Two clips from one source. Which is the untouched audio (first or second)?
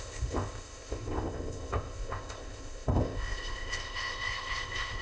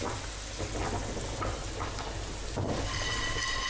second